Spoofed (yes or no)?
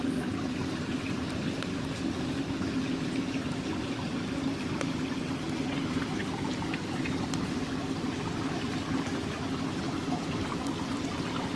no